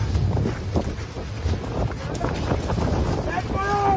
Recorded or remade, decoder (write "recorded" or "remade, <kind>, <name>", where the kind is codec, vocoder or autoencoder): recorded